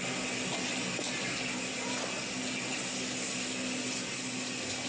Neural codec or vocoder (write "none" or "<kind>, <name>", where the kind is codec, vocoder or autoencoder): none